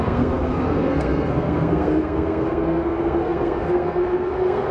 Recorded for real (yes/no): no